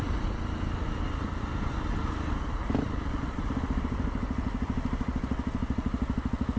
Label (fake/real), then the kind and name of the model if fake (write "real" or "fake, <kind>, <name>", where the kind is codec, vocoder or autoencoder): real